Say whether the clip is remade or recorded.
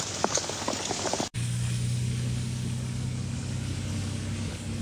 remade